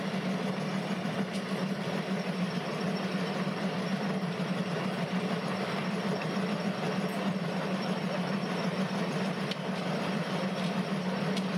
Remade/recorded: remade